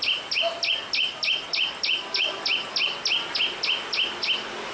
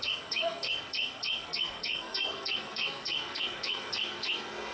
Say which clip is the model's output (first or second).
second